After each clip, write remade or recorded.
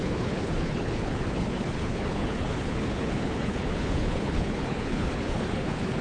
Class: remade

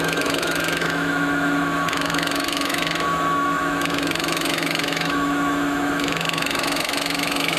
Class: remade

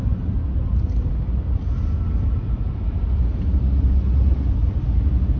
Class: recorded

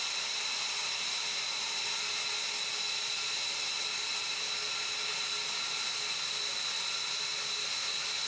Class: recorded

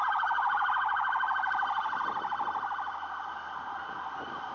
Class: remade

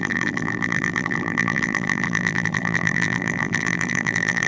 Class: remade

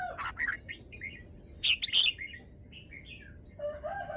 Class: recorded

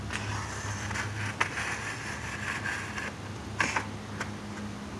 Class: recorded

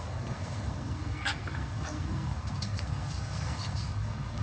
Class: remade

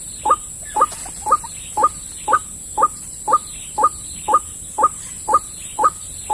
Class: recorded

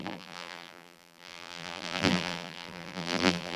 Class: remade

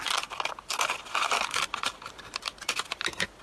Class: recorded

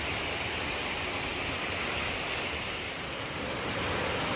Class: recorded